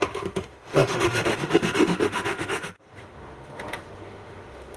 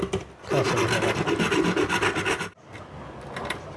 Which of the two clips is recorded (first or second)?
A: second